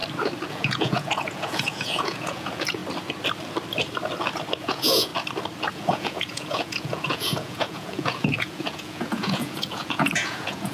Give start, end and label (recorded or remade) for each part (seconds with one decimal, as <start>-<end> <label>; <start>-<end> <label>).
0.0-0.5 recorded; 0.5-2.8 remade; 2.8-4.6 recorded; 4.6-5.1 remade; 5.1-5.7 recorded; 5.7-10.7 remade

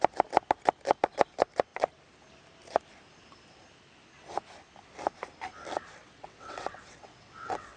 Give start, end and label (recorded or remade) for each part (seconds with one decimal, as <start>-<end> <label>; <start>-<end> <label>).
0.0-5.9 recorded; 5.9-7.8 remade

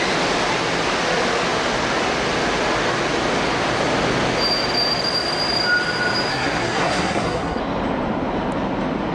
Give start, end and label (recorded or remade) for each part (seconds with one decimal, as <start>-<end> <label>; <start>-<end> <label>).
0.0-6.3 recorded; 6.3-7.6 remade; 7.6-9.1 recorded

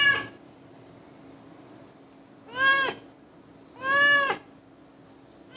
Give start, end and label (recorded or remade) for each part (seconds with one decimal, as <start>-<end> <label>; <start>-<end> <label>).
0.0-5.6 recorded

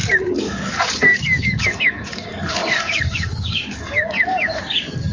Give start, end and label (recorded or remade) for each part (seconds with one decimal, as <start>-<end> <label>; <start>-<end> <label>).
0.0-5.1 remade

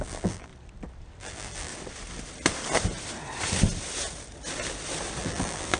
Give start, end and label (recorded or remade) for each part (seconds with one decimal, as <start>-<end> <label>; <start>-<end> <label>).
0.0-0.5 remade; 0.5-1.2 recorded; 1.2-1.7 remade; 1.7-5.2 recorded; 5.2-5.8 remade

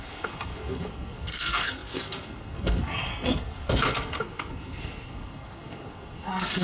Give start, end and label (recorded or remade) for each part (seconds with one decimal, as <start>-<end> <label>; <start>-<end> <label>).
0.0-6.6 remade

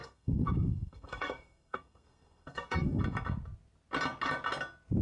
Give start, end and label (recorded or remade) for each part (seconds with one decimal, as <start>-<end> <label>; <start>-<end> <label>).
0.0-3.0 remade; 3.0-5.0 recorded